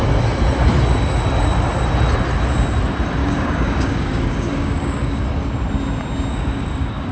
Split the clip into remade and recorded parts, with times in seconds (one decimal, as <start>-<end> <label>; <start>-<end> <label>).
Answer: 0.0-3.2 recorded; 3.2-5.2 remade; 5.2-6.3 recorded; 6.3-7.1 remade